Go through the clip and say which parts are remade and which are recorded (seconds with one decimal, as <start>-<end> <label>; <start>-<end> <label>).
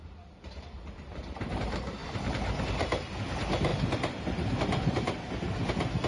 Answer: 0.0-1.4 remade; 1.4-2.0 recorded; 2.0-2.5 remade; 2.5-6.1 recorded